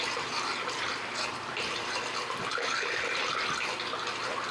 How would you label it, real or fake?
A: real